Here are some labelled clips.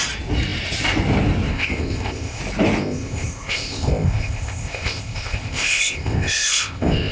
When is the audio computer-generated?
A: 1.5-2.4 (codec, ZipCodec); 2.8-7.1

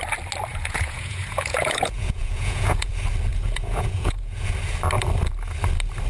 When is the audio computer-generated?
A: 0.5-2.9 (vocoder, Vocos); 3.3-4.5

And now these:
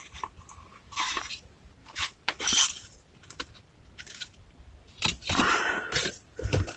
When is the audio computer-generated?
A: 0.7-1.4 (autoencoder, DAC-VAE); 1.8-2.4

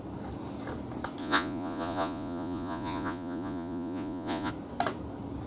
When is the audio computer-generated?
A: 1.2-4.5 (vocoder, Vocos)

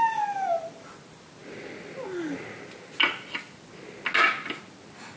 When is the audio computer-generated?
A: none